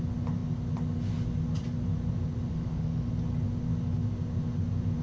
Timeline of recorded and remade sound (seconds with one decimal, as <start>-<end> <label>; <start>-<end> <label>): 0.0-2.5 recorded; 2.5-3.1 remade; 3.1-5.0 recorded